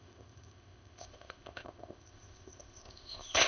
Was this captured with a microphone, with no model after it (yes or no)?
no